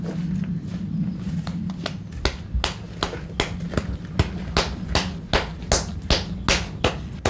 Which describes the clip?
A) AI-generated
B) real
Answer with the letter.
B